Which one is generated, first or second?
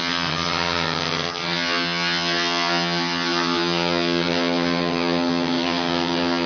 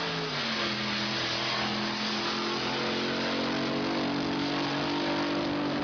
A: first